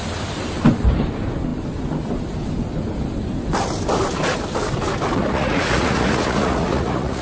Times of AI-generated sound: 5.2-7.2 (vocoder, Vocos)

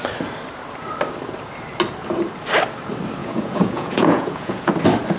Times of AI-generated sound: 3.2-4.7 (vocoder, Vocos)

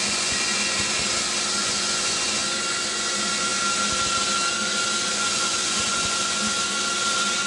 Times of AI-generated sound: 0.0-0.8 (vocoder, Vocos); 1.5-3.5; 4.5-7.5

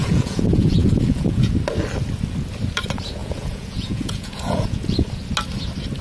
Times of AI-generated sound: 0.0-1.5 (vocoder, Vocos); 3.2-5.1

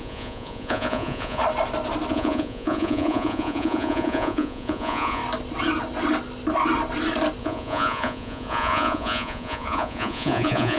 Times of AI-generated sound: 0.0-1.4 (vocoder, Vocos); 2.1-5.2; 7.4-10.8